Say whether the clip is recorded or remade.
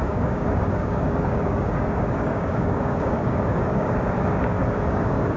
remade